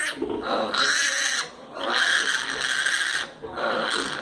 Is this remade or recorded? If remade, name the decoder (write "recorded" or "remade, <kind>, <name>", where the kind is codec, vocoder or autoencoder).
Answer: recorded